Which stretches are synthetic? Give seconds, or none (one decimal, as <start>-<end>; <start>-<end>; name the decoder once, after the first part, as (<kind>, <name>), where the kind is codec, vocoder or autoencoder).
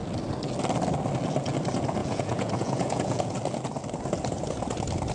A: 2.0-3.3 (vocoder, Vocos)